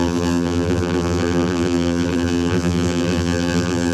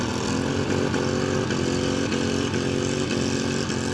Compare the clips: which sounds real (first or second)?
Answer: second